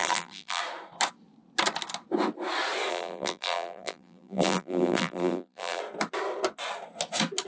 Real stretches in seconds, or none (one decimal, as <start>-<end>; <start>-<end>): 0.6-2.9; 5.8-7.5